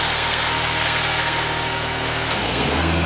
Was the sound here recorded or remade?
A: remade